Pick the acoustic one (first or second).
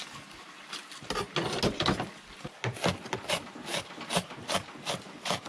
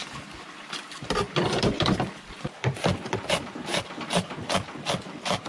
first